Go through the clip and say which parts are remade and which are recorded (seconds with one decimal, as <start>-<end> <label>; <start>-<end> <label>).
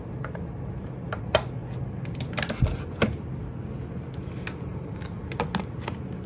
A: 0.0-4.7 recorded; 4.7-5.2 remade; 5.2-6.3 recorded